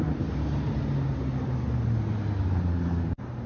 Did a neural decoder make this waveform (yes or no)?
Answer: no